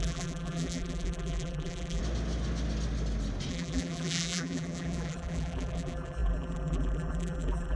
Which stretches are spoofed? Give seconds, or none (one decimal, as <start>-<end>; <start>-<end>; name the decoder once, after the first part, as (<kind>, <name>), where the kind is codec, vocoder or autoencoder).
0.0-2.0 (vocoder, BigVGAN v2); 3.5-7.8